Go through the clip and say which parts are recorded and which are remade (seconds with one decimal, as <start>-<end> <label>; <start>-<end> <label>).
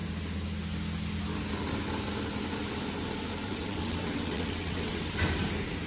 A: 0.0-3.5 recorded; 3.5-5.1 remade; 5.1-5.9 recorded